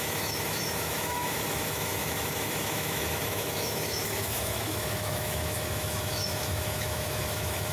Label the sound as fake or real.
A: fake